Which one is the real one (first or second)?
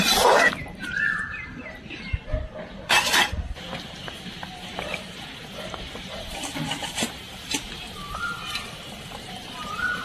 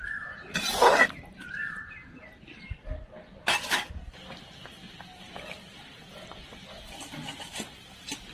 second